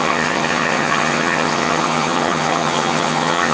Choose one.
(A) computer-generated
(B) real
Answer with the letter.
A